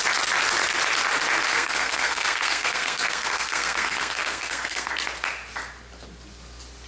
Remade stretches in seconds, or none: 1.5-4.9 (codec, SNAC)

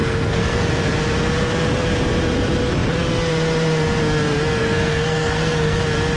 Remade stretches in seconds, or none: 0.0-0.7 (codec, SNAC); 4.6-5.8

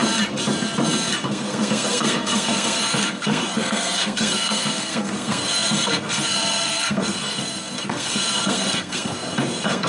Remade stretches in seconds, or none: 1.1-9.9 (codec, SNAC)